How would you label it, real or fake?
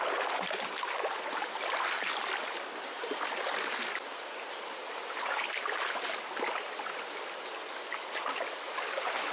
real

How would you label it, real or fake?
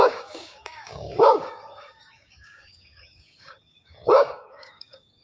fake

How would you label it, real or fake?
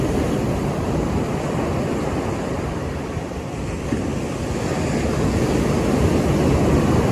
real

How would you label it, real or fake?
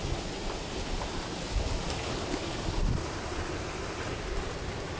real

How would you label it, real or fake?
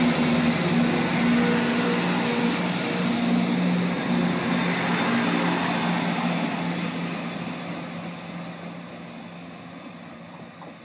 real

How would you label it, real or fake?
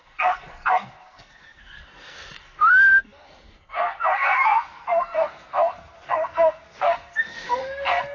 fake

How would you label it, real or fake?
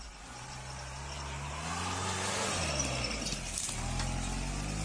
real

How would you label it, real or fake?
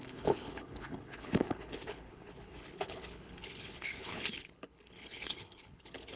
fake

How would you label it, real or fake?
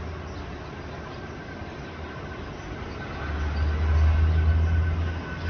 real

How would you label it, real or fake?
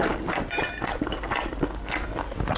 real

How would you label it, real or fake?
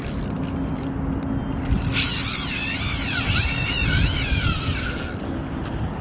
real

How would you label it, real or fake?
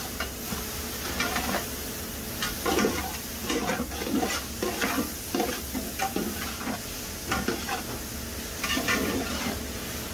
real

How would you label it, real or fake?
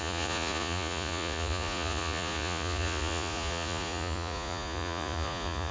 fake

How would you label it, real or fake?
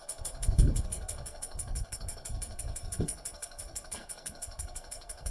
fake